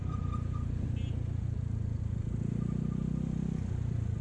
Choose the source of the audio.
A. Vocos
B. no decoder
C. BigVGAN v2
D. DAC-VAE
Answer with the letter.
B